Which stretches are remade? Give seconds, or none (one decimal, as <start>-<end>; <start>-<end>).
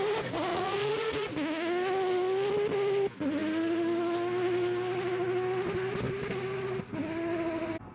0.5-1.3